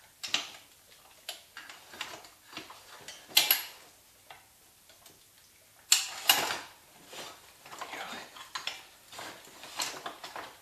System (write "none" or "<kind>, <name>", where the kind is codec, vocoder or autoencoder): none